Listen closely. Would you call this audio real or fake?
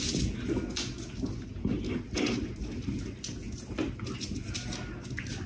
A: real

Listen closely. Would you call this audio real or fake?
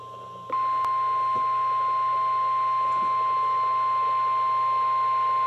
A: real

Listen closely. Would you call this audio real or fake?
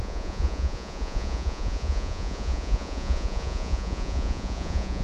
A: fake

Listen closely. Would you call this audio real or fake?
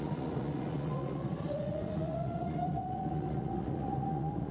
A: fake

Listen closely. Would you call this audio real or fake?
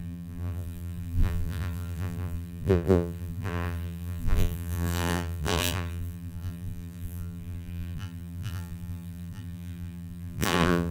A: fake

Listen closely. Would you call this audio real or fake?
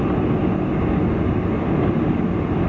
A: real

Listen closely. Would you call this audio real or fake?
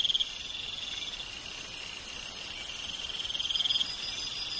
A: real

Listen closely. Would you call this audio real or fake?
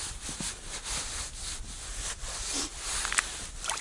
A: real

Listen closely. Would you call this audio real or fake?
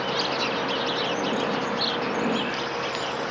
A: real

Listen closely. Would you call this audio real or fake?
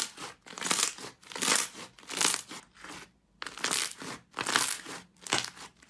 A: real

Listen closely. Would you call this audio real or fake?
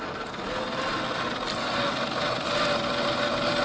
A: real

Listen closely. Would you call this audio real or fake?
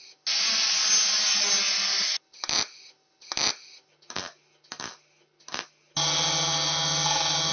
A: real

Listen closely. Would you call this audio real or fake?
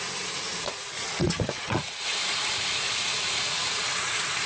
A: fake